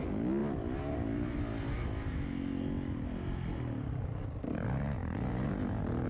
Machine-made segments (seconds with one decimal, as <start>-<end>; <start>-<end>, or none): none